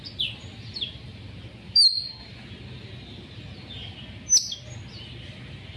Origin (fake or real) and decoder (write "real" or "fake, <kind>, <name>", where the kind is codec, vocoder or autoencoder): real